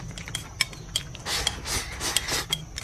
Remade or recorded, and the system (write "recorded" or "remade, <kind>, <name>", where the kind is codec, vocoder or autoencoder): recorded